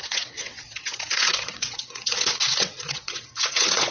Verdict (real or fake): fake